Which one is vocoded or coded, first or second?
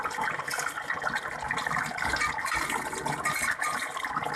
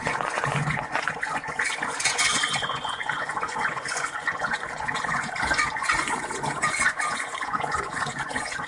second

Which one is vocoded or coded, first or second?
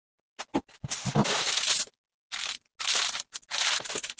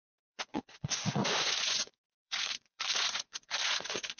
second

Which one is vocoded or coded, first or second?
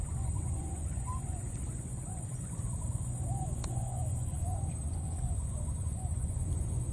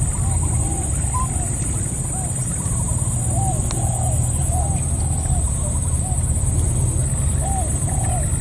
first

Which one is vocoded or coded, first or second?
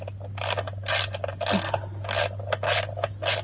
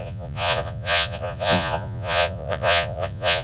second